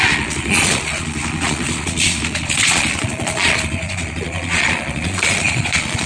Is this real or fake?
fake